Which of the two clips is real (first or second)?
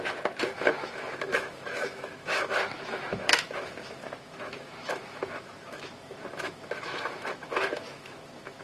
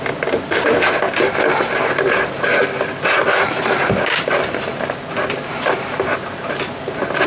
second